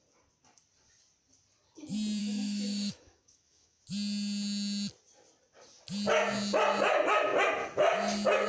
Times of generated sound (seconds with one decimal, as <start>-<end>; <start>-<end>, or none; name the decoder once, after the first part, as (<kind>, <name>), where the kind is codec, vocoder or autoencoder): 2.2-3.8 (autoencoder, DAC-VAE)